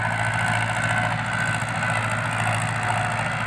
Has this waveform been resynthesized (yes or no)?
no